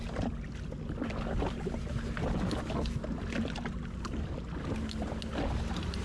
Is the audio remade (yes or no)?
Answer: no